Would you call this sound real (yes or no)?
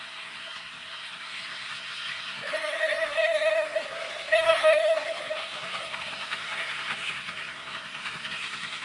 no